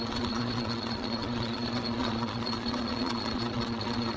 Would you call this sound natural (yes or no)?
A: no